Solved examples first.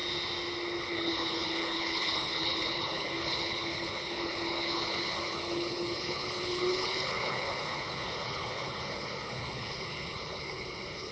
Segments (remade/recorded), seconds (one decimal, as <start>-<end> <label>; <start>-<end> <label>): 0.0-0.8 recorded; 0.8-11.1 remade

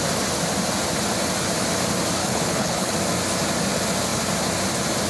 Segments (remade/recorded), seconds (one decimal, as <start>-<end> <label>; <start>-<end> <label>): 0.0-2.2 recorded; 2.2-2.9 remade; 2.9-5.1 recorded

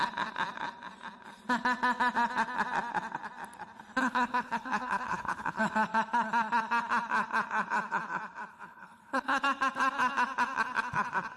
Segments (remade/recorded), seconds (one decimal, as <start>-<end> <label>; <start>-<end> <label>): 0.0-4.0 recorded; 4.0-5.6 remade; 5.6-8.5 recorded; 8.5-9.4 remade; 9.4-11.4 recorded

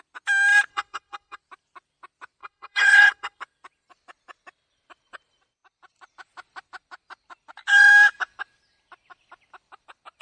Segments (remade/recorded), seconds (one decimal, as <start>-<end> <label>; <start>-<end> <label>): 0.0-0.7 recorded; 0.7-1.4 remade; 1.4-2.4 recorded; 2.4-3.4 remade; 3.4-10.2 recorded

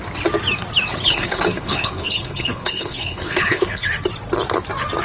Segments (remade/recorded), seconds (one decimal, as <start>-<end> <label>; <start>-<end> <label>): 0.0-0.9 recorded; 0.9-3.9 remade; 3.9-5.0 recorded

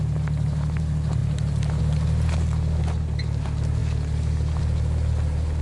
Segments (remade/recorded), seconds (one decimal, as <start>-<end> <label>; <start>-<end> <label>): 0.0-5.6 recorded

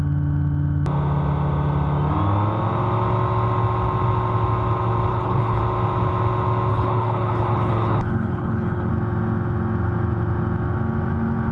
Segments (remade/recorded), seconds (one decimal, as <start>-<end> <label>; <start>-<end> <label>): 0.0-5.1 recorded; 5.1-5.6 remade; 5.6-6.7 recorded; 6.7-8.9 remade; 8.9-11.5 recorded

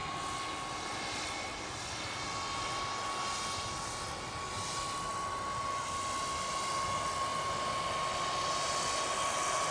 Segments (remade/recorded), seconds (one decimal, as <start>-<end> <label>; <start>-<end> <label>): 0.0-9.7 recorded